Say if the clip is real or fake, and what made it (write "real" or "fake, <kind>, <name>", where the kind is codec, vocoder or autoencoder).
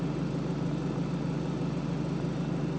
real